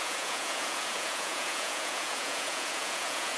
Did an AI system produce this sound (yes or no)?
yes